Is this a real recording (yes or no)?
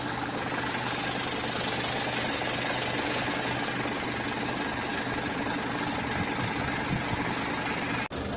yes